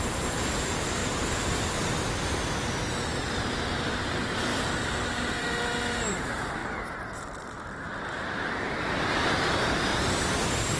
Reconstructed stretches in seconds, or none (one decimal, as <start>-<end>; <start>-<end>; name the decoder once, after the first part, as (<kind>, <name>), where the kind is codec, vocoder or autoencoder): 0.0-1.0 (vocoder, BigVGAN v2); 3.9-9.9

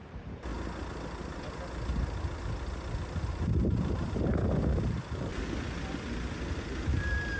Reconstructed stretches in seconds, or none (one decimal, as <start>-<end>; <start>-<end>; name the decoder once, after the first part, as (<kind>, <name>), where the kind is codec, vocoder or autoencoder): 0.0-0.5 (vocoder, BigVGAN v2); 3.3-5.3; 6.6-7.4

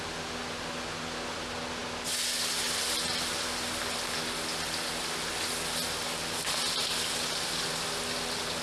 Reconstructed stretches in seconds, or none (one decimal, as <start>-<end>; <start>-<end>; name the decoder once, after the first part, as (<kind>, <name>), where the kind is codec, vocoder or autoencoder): none

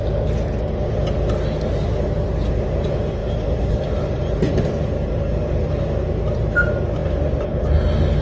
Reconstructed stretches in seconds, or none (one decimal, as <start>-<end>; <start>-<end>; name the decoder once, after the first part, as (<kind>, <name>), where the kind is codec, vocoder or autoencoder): 3.2-5.5 (vocoder, BigVGAN v2)

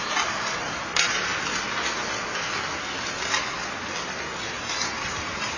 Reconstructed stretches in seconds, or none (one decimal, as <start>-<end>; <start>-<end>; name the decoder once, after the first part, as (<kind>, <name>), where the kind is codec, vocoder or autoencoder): 0.0-1.3 (vocoder, BigVGAN v2); 4.4-5.6

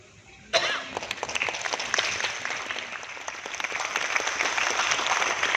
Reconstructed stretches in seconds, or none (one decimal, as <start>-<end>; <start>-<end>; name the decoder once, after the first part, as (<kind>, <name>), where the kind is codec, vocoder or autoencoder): none

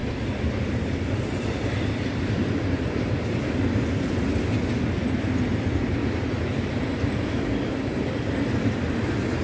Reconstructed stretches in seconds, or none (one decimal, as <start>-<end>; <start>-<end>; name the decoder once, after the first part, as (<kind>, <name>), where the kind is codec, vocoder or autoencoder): 0.0-4.1 (vocoder, BigVGAN v2); 6.0-9.0

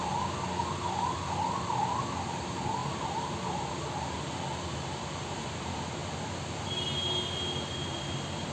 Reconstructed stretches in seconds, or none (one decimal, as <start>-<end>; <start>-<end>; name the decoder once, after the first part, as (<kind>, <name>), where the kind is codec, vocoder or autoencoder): none